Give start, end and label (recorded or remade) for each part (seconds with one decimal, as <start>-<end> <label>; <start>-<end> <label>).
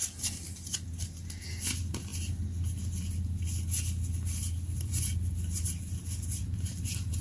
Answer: 0.0-7.2 recorded